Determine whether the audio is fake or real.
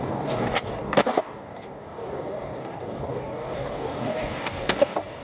fake